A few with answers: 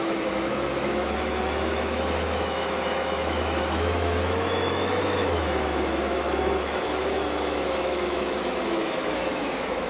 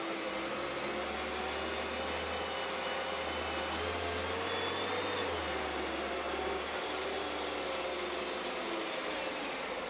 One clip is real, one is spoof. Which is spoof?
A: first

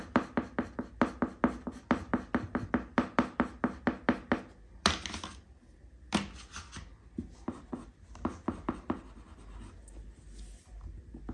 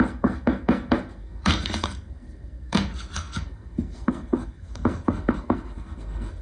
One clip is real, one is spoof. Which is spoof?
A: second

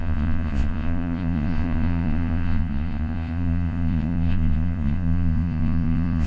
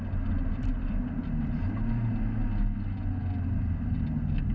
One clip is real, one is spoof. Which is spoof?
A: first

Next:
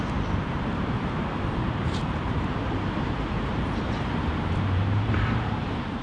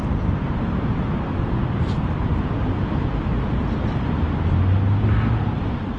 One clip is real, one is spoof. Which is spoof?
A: first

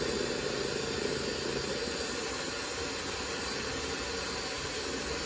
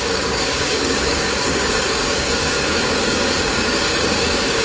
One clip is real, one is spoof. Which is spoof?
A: second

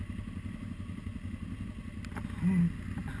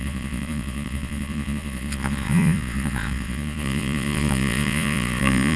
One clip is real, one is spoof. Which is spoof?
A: second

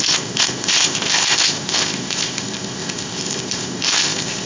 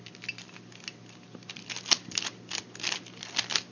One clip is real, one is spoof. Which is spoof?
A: first